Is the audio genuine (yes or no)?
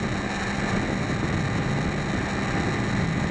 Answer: yes